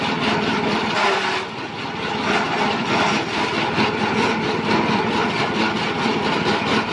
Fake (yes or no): yes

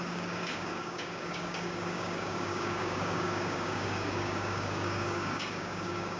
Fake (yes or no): yes